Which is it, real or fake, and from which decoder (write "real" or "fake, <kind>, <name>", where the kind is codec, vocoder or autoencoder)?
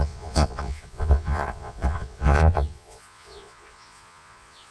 fake, vocoder, Vocos